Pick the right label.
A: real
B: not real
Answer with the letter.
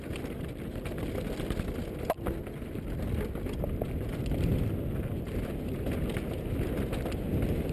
A